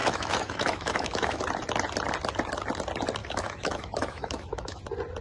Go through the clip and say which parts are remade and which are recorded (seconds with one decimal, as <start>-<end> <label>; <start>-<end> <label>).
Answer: 0.0-1.4 remade; 1.4-3.2 recorded; 3.2-4.8 remade; 4.8-5.2 recorded